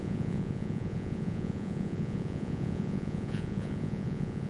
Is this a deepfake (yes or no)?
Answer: yes